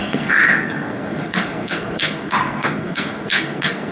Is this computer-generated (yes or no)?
yes